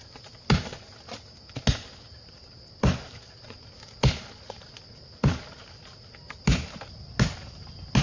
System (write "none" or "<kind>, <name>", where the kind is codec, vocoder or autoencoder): none